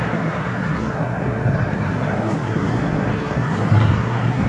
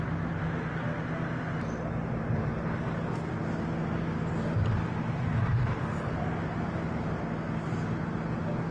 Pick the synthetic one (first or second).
first